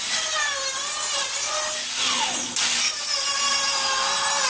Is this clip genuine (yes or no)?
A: yes